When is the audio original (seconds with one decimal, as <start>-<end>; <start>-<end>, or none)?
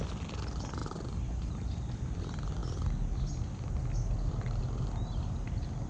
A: 0.0-5.9